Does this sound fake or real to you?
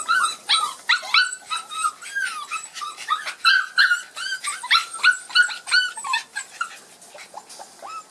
real